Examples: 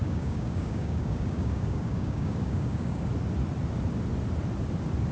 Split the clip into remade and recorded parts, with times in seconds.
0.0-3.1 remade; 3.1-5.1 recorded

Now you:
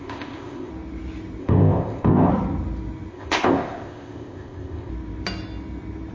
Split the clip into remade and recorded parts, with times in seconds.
0.0-0.7 remade; 0.7-1.4 recorded; 1.4-2.3 remade; 2.3-3.1 recorded; 3.1-4.9 remade; 4.9-6.1 recorded

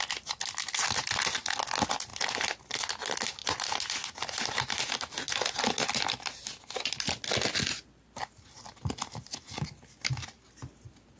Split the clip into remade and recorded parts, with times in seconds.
0.0-11.2 recorded

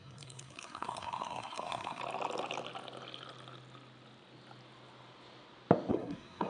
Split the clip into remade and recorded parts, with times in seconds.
0.0-2.0 remade; 2.0-5.9 recorded; 5.9-6.5 remade

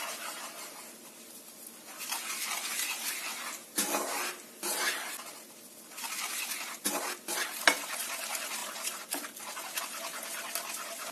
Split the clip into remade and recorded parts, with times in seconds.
0.0-11.1 recorded